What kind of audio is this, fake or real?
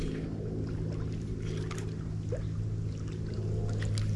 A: real